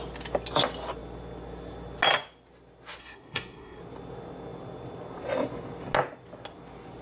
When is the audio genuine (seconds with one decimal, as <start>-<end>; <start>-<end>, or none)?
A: 0.0-3.0; 3.8-7.0